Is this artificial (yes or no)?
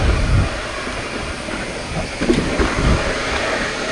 no